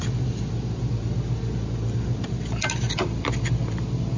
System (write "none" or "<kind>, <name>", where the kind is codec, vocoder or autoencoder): none